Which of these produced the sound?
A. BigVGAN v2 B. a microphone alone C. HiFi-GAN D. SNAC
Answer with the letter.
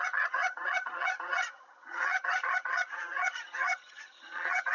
C